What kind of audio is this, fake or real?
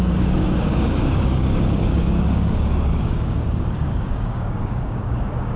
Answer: fake